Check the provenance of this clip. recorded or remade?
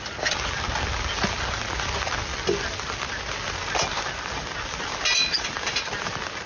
recorded